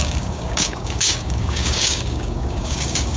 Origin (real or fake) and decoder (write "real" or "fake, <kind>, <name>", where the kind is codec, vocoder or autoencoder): fake, codec, DAC